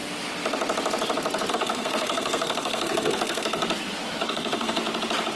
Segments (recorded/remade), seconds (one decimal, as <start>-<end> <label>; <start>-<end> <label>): 0.0-1.5 recorded; 1.5-3.6 remade; 3.6-4.3 recorded; 4.3-4.8 remade; 4.8-5.4 recorded